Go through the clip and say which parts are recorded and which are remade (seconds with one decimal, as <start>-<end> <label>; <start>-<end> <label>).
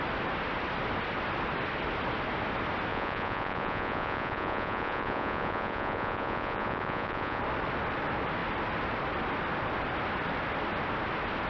0.0-2.9 recorded; 2.9-7.4 remade; 7.4-11.5 recorded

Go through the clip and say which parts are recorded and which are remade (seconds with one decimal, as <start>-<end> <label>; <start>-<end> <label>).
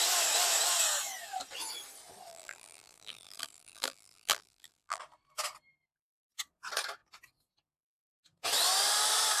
0.0-2.3 recorded; 2.3-5.0 remade; 5.0-9.4 recorded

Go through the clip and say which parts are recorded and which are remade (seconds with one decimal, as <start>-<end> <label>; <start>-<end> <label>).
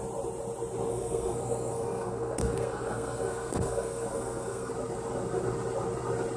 0.0-0.9 recorded; 0.9-4.7 remade; 4.7-6.4 recorded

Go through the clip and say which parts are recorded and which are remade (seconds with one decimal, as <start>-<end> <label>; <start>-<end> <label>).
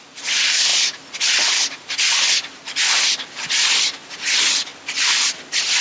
0.0-5.8 recorded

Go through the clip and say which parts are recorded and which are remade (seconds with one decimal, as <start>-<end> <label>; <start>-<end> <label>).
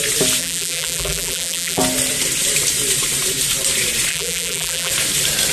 0.0-0.4 recorded; 0.4-1.8 remade; 1.8-4.1 recorded; 4.1-4.9 remade; 4.9-5.5 recorded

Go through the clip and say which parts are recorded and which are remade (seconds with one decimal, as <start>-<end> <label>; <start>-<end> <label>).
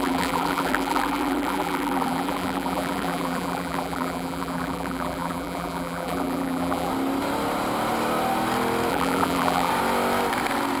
0.0-6.9 remade; 6.9-8.9 recorded; 8.9-9.7 remade; 9.7-10.8 recorded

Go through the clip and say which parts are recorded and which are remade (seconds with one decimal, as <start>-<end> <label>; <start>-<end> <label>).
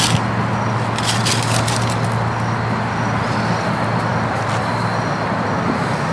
0.0-6.1 recorded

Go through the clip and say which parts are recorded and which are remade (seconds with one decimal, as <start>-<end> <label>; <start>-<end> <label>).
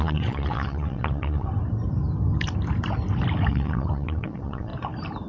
0.0-1.5 remade; 1.5-3.5 recorded; 3.5-4.7 remade; 4.7-5.3 recorded